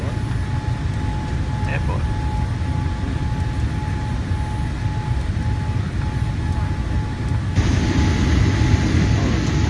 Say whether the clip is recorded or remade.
recorded